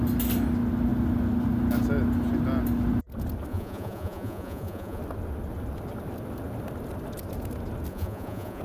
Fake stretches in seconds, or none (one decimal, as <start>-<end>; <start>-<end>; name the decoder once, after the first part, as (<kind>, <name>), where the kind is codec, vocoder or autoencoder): 3.5-5.0 (vocoder, Vocos); 7.9-8.6